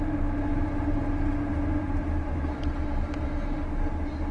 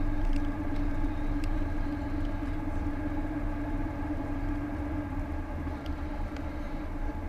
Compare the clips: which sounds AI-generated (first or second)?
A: second